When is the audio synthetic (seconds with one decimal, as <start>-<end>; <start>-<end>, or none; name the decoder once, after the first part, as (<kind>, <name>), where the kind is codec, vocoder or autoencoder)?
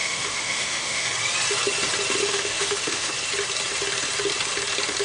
0.0-1.1 (autoencoder, DAC-VAE); 2.2-3.1